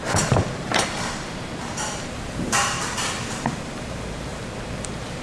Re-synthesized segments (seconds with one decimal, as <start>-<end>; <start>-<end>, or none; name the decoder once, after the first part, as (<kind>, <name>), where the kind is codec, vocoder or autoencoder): 0.0-5.2 (vocoder, BigVGAN v2)